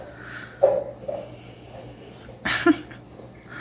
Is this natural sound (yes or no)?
yes